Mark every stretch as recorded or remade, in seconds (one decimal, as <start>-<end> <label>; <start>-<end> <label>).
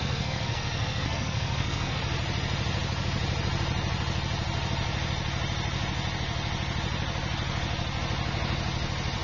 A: 0.0-2.0 remade; 2.0-9.2 recorded